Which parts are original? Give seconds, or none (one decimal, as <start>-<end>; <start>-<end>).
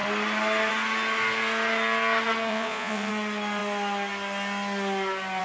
0.0-2.5; 3.1-5.4